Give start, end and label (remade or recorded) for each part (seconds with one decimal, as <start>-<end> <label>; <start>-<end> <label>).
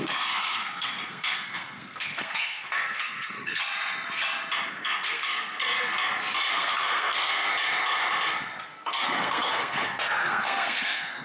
0.0-3.6 remade; 3.6-4.7 recorded; 4.7-5.7 remade; 5.7-6.5 recorded; 6.5-7.5 remade; 7.5-8.6 recorded; 8.6-11.2 remade